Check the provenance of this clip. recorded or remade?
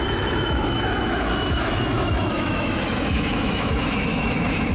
remade